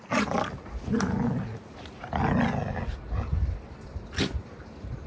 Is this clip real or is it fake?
real